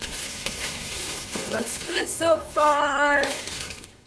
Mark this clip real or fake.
fake